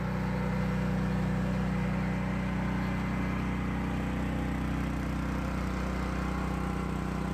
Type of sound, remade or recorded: recorded